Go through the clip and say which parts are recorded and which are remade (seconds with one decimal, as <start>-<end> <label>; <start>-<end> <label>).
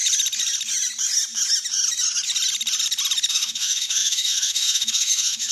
0.0-3.3 recorded; 3.3-5.5 remade